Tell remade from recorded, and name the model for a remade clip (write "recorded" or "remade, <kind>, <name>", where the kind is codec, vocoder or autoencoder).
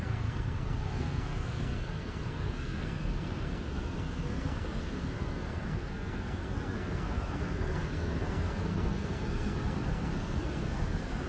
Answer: remade, codec, SNAC